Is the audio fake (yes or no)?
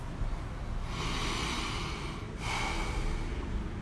no